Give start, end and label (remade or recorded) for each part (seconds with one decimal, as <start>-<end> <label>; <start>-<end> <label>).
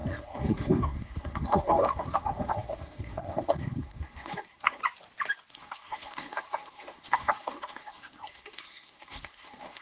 0.0-4.8 remade; 4.8-5.5 recorded; 5.5-9.8 remade